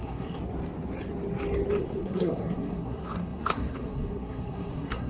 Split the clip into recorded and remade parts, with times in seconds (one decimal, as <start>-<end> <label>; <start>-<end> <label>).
0.0-0.4 remade; 0.4-1.7 recorded; 1.7-5.1 remade